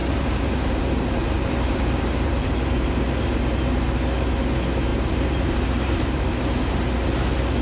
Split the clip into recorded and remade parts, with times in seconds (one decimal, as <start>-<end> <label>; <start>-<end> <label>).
0.0-3.6 remade; 3.6-4.9 recorded; 4.9-6.4 remade; 6.4-7.6 recorded